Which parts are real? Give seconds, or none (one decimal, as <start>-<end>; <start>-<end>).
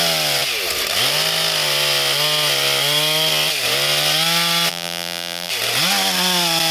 0.0-4.7; 5.5-6.7